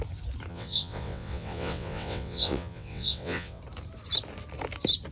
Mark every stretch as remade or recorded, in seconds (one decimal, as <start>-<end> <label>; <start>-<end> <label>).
0.0-0.5 recorded; 0.5-3.6 remade; 3.6-5.1 recorded